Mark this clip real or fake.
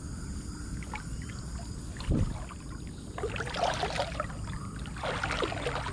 real